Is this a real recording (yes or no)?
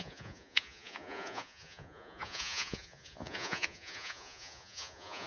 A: no